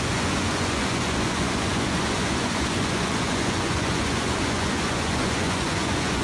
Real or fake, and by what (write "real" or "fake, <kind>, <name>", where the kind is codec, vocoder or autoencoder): fake, vocoder, Vocos